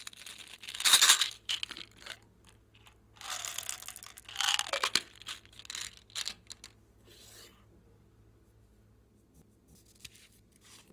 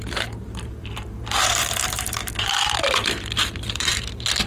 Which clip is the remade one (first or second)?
second